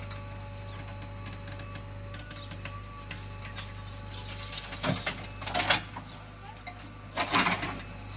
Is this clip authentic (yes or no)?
yes